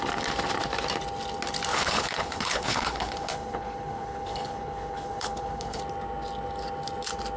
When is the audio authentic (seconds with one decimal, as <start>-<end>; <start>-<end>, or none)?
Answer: 0.0-1.7; 5.8-7.4